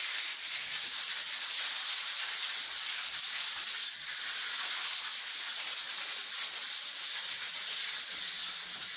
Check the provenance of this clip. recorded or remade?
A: recorded